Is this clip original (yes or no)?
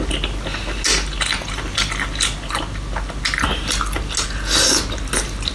yes